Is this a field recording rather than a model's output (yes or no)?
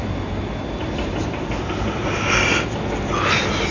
yes